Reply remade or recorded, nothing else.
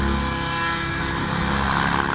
recorded